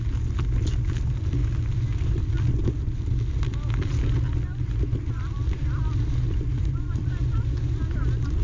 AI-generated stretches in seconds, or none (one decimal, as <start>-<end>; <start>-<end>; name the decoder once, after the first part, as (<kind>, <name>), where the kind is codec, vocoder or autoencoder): none